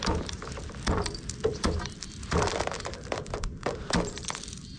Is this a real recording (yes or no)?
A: no